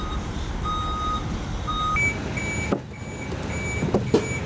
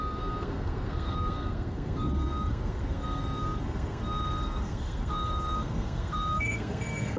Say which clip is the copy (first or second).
second